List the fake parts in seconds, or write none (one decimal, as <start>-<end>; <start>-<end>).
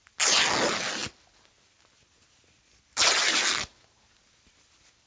none